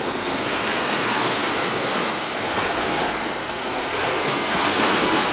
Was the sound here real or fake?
fake